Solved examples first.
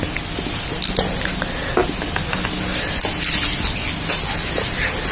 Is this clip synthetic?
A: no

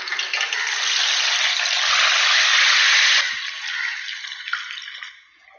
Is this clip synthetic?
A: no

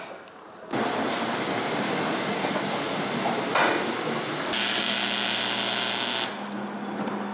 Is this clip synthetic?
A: no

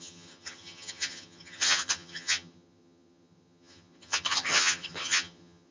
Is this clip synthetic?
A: yes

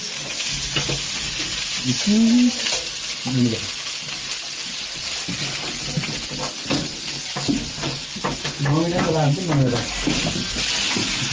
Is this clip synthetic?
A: no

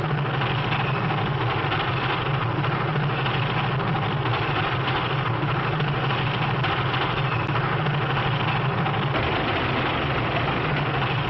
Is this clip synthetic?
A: no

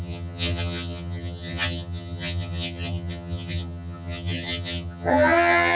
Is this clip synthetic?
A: yes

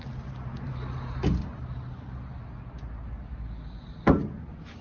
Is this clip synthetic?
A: no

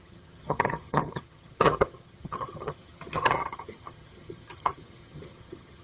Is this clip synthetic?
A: yes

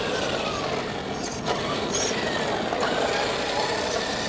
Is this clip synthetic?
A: no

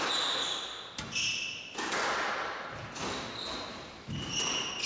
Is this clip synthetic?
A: no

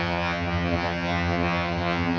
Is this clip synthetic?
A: yes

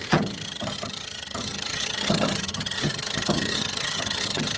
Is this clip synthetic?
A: yes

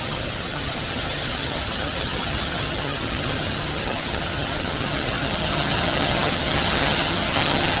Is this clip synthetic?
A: yes